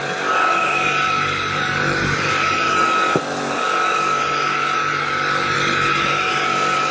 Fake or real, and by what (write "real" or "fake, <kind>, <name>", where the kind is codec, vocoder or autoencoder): fake, codec, DAC